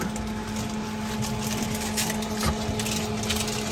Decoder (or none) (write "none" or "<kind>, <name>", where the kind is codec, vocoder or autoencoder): none